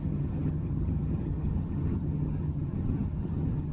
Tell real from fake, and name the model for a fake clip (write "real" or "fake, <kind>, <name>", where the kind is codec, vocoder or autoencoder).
fake, vocoder, HiFi-GAN